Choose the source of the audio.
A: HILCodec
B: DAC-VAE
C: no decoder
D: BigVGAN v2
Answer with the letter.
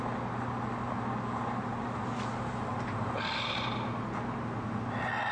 C